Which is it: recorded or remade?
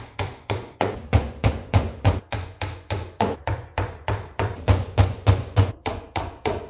remade